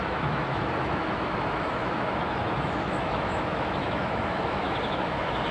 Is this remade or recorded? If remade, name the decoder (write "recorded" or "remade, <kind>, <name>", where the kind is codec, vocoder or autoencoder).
remade, autoencoder, DAC-VAE